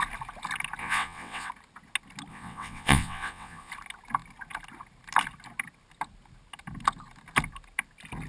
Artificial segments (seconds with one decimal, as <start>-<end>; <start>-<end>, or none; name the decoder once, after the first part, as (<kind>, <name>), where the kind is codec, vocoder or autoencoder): 0.8-1.5 (vocoder, WaveNeXt); 2.3-3.7